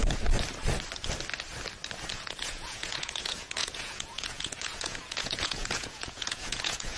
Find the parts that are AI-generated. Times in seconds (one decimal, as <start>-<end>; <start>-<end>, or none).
2.1-7.0